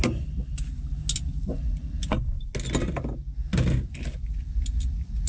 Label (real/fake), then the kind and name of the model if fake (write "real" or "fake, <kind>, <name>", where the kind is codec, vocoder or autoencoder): real